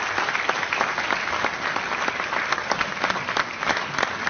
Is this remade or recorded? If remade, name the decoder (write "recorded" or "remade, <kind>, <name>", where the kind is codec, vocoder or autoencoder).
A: recorded